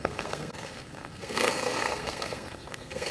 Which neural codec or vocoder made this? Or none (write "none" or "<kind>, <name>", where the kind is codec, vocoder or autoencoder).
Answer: codec, SNAC